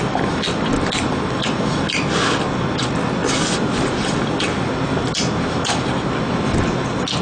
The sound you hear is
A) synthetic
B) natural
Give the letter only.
B